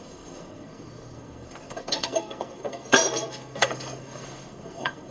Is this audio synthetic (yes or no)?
yes